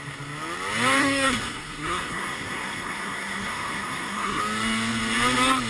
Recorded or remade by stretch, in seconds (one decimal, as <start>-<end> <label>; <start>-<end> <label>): 0.0-1.0 recorded; 1.0-4.4 remade; 4.4-5.7 recorded